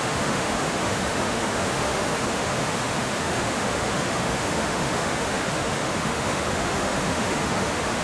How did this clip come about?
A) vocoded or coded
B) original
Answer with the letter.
A